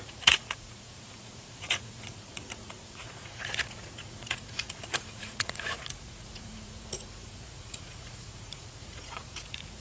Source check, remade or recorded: remade